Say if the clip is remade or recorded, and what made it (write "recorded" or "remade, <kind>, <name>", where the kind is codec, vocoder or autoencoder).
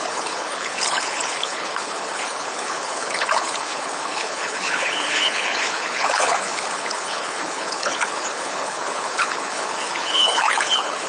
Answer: remade, codec, HILCodec